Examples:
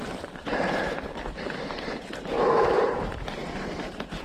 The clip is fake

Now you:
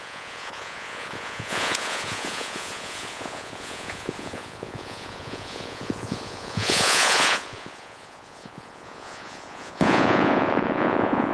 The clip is fake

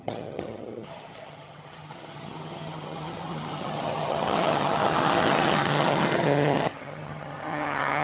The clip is fake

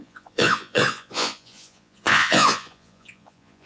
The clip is fake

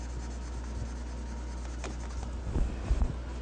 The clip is real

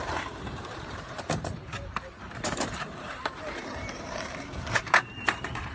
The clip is fake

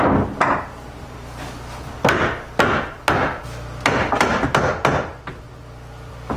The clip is real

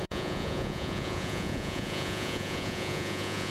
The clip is fake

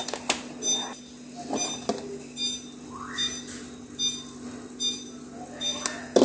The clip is real